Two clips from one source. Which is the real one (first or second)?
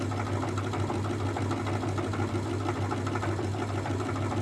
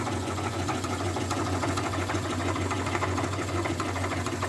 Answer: first